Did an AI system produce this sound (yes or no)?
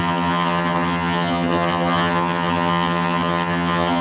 yes